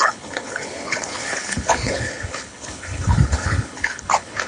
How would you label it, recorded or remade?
remade